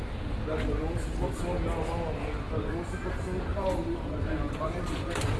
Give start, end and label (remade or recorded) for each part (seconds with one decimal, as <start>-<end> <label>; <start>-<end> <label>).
0.0-3.5 recorded; 3.5-5.0 remade; 5.0-5.4 recorded